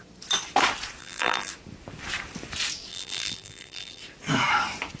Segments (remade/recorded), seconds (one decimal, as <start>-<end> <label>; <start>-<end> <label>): 0.0-1.0 recorded; 1.0-1.5 remade; 1.5-2.9 recorded; 2.9-4.0 remade; 4.0-5.0 recorded